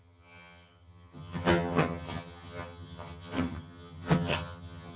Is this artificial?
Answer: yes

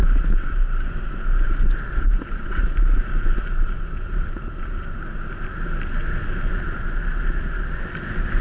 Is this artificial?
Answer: no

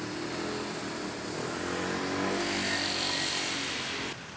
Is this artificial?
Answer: no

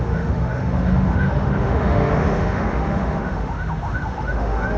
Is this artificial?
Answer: yes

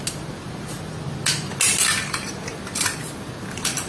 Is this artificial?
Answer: no